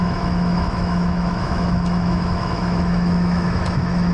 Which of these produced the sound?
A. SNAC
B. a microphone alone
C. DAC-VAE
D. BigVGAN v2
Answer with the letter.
C